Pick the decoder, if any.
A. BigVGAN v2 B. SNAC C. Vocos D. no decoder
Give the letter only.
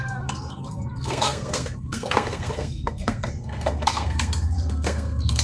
B